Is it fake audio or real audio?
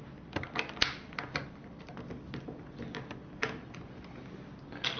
real